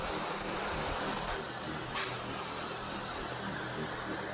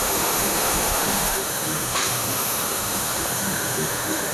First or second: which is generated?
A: second